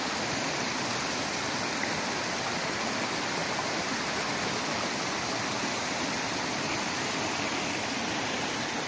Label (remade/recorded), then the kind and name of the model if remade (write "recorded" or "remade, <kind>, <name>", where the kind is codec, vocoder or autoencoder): recorded